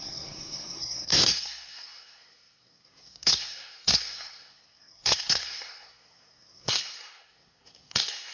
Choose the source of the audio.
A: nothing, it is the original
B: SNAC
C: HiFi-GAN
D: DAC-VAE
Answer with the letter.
B